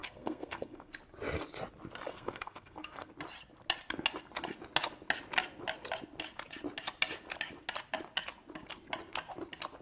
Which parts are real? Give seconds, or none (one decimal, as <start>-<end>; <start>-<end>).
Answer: 0.9-2.1; 3.1-9.8